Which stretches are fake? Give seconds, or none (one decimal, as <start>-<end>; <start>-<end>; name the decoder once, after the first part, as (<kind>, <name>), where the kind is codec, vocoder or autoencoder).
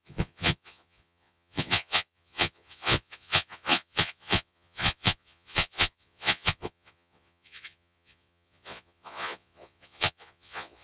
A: 0.0-10.8 (vocoder, Vocos)